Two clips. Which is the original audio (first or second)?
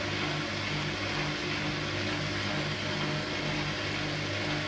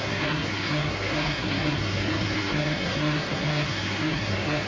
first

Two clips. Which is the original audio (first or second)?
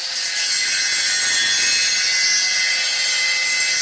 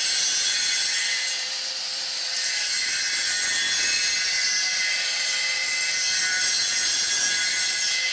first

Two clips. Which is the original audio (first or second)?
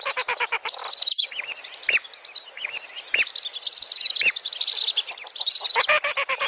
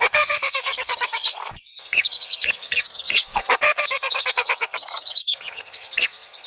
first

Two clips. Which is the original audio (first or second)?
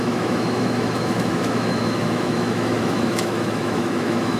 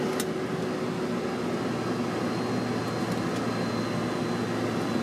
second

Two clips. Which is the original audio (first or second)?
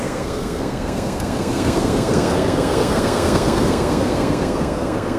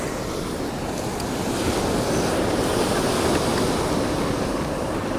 second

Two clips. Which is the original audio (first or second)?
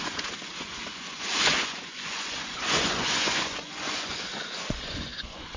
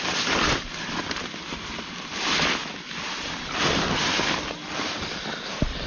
second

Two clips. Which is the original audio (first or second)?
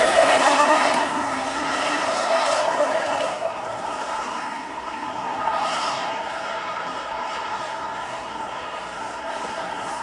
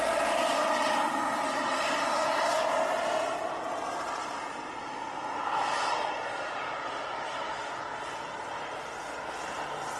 second